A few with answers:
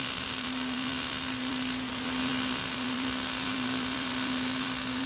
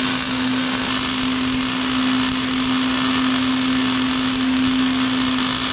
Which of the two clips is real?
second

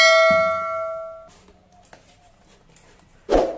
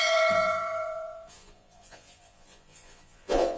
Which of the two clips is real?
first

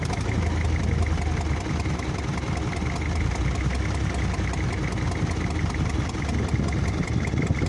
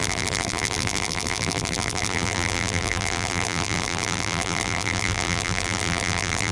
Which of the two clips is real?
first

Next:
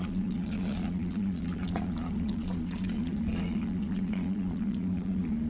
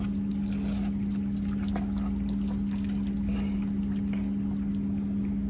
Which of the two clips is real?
second